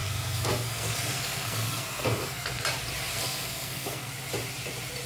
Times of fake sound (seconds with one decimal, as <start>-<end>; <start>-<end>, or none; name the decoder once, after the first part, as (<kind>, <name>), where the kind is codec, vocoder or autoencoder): 0.0-2.6 (codec, SNAC); 3.1-4.1